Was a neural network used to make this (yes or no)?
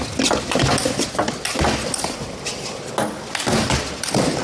no